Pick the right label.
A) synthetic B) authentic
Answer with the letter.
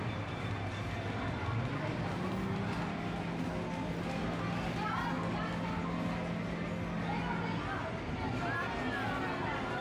B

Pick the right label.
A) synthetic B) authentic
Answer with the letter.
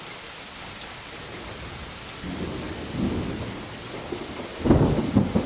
B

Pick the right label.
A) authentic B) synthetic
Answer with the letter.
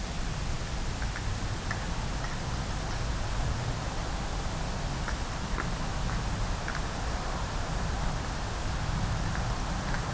A